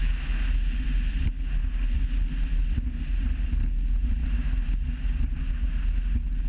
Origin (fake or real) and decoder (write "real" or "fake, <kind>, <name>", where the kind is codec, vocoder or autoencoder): real